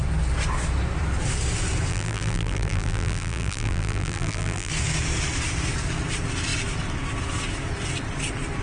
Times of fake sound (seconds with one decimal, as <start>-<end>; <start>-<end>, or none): 1.9-4.7